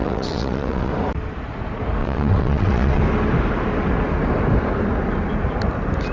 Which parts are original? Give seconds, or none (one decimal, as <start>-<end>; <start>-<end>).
0.9-2.0; 3.0-6.1